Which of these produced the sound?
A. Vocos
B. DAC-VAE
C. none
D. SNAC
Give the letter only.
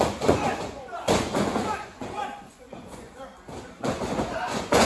A